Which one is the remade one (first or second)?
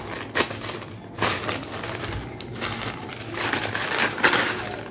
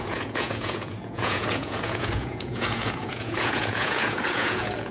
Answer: second